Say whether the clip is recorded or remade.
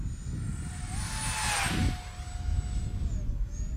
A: recorded